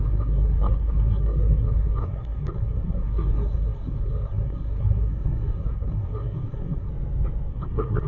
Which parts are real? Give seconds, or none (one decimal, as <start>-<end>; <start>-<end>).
6.9-7.5